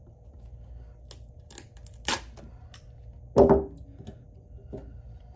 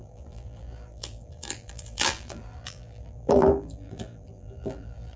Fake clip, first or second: second